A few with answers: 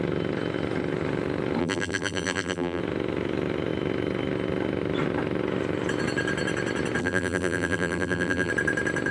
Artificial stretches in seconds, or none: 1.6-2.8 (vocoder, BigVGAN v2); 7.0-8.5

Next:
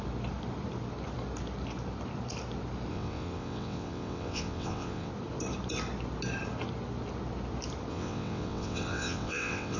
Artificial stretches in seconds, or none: 2.9-5.1 (vocoder, WaveNeXt); 7.9-9.8

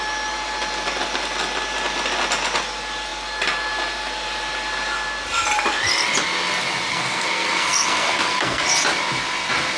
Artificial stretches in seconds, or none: 6.9-8.6 (codec, SNAC)

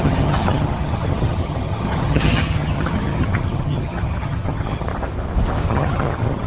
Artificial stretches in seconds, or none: 0.0-4.9 (vocoder, HiFi-GAN); 5.7-6.5

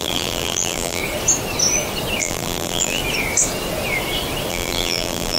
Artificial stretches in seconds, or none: 0.0-1.0 (vocoder, BigVGAN v2); 2.2-3.0; 4.5-5.4

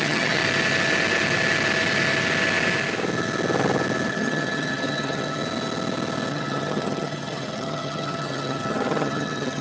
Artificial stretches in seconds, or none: 0.0-0.4 (vocoder, HiFi-GAN); 4.1-5.4; 6.3-9.6

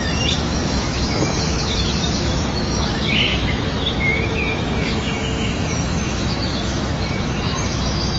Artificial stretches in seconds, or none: 0.0-8.2 (autoencoder, DAC-VAE)

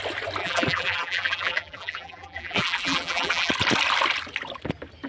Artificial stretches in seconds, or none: 0.4-3.5 (vocoder, BigVGAN v2)